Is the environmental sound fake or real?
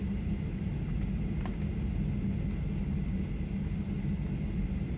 real